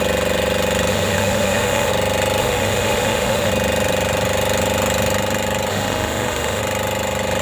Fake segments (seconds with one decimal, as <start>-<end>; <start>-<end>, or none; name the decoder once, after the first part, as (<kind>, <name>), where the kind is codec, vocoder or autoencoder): 0.9-1.9 (autoencoder, DAC-VAE); 2.4-3.5; 5.7-6.6